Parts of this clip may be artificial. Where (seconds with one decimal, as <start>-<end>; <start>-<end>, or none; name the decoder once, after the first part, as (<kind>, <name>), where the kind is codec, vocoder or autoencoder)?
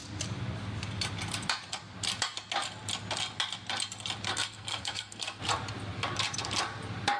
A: 4.3-5.4 (codec, SNAC)